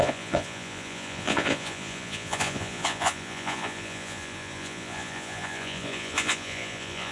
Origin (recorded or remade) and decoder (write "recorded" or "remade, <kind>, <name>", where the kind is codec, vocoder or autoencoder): remade, vocoder, Vocos